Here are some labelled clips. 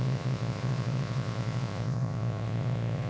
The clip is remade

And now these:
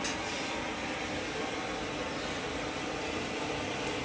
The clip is recorded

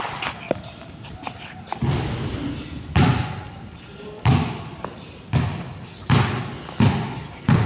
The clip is recorded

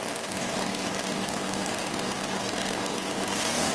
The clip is remade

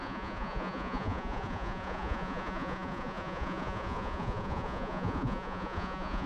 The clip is remade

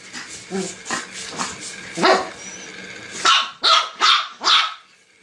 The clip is recorded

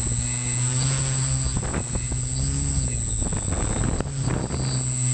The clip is recorded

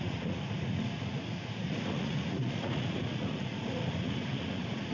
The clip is remade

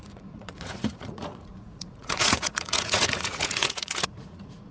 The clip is remade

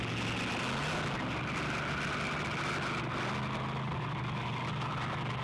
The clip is recorded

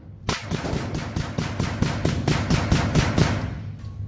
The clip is recorded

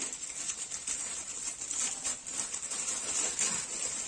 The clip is recorded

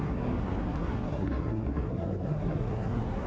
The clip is remade